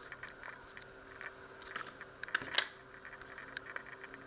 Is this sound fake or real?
real